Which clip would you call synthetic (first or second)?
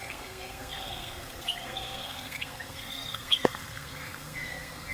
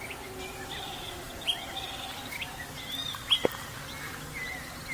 first